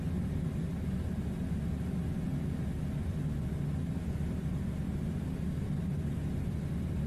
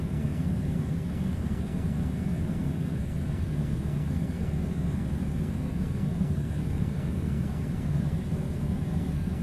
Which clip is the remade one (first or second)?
second